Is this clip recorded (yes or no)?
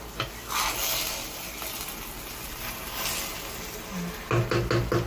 yes